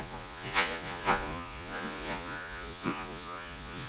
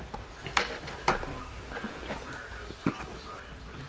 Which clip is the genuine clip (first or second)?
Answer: second